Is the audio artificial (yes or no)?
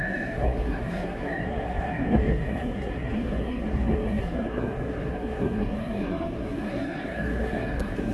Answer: yes